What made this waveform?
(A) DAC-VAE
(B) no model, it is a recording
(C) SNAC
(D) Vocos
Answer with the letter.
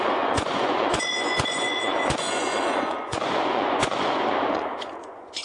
D